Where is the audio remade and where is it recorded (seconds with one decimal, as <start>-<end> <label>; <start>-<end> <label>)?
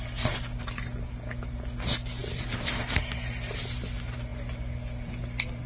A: 0.0-5.7 recorded